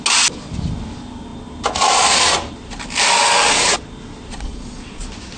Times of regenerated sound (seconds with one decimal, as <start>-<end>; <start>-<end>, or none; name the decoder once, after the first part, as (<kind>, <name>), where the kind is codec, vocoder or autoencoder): 4.3-5.0 (vocoder, Vocos)